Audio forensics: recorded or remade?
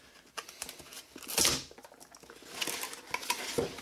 recorded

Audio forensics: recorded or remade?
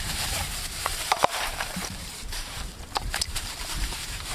remade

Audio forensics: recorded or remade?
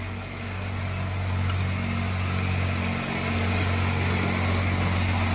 recorded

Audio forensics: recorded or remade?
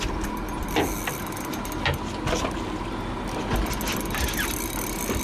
recorded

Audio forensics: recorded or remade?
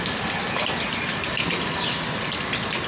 recorded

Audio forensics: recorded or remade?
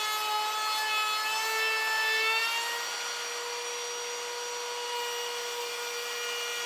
recorded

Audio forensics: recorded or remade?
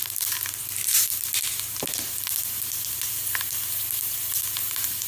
remade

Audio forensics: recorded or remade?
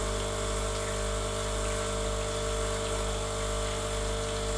recorded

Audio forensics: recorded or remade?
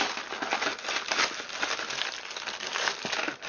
recorded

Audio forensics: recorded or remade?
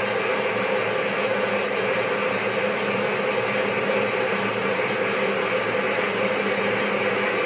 recorded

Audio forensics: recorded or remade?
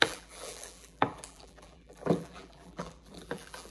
remade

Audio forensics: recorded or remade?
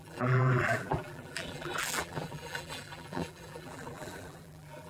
remade